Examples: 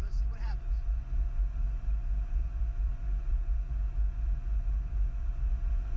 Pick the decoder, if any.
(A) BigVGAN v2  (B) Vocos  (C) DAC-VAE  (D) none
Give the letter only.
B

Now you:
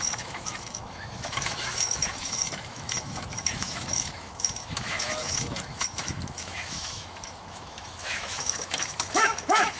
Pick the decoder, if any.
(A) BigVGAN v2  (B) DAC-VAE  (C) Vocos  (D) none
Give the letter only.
B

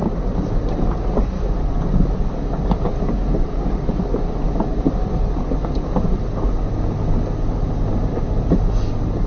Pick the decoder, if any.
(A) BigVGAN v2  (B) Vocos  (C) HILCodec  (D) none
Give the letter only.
D